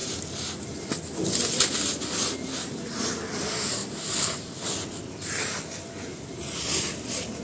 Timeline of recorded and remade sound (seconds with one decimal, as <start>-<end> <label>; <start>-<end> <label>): 0.0-2.1 remade; 2.1-2.6 recorded; 2.6-3.4 remade; 3.4-3.8 recorded; 3.8-5.6 remade; 5.6-6.1 recorded; 6.1-7.4 remade